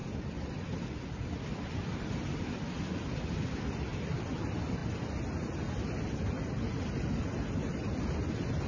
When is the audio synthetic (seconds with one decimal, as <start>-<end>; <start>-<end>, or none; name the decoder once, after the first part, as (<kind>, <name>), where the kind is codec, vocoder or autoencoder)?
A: none